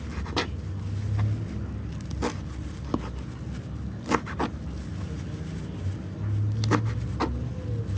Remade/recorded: recorded